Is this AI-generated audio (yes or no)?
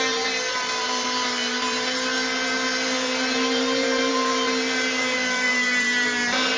yes